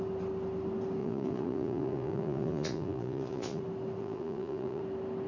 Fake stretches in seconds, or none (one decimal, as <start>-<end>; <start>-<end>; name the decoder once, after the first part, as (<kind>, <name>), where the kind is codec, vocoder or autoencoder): 1.0-3.6 (vocoder, Vocos); 4.0-4.8

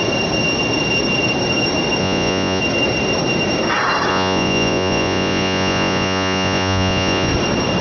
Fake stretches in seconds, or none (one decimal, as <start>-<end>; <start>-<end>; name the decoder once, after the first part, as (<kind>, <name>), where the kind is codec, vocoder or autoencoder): 2.0-2.6 (vocoder, Vocos); 4.1-7.3

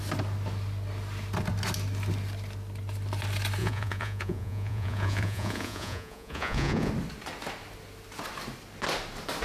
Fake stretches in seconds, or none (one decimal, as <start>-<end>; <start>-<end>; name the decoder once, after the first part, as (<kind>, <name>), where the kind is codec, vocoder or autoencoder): 3.6-6.9 (vocoder, Vocos)

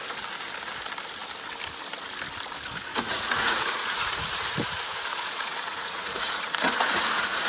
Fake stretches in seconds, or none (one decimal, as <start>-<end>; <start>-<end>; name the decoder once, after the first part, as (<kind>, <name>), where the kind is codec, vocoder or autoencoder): 2.9-7.5 (vocoder, Vocos)

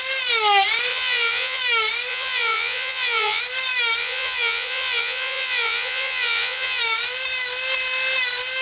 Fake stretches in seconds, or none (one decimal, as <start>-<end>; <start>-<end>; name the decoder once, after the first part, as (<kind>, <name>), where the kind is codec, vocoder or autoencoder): 0.9-1.6 (vocoder, Vocos); 2.1-3.4; 4.0-6.8

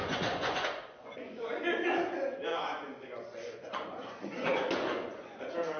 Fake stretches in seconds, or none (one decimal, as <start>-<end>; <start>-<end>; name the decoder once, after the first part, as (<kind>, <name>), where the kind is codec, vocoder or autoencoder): 0.0-1.6 (vocoder, Vocos); 2.5-5.8